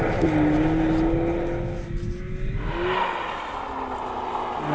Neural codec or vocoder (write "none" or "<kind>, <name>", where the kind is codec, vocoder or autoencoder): none